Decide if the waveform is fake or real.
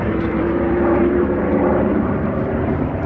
fake